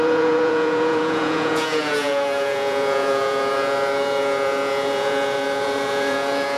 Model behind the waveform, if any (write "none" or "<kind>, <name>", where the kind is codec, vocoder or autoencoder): vocoder, Vocos